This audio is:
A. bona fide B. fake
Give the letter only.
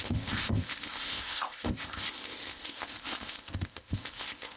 B